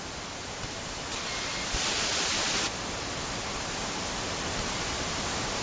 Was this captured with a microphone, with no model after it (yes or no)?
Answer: yes